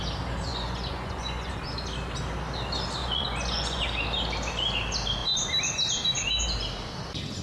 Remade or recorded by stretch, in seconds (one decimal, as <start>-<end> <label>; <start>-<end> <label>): 0.0-0.5 recorded; 0.5-1.5 remade; 1.5-3.0 recorded; 3.0-3.8 remade; 3.8-7.4 recorded